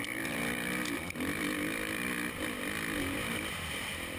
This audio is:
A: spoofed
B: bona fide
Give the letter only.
A